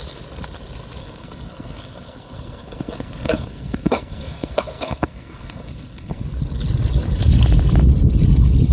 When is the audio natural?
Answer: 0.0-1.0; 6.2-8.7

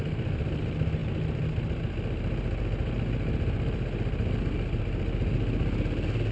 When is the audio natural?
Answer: 0.0-6.3

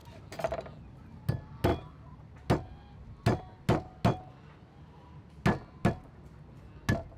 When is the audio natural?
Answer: 0.0-7.2

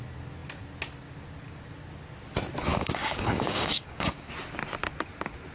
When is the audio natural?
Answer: 0.0-2.7; 4.3-5.5

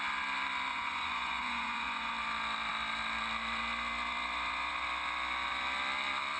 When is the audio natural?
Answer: 0.0-0.7; 2.1-6.4

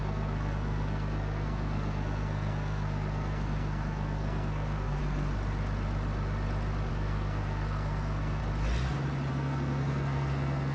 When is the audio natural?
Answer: 5.0-6.9; 8.4-9.3

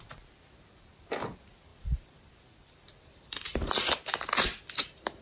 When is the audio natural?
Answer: 0.0-1.7; 4.3-5.2